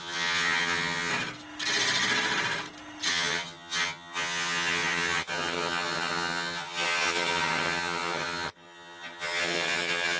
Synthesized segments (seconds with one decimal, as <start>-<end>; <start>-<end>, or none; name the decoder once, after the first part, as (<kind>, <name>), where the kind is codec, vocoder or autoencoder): 0.0-1.1 (vocoder, HiFi-GAN); 3.1-10.2